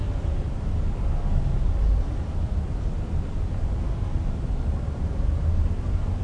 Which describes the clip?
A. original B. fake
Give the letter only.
A